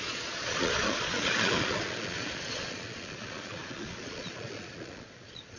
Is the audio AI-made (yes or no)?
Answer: yes